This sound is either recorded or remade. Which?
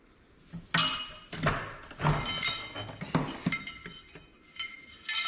recorded